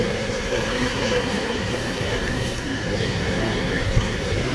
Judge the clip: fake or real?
fake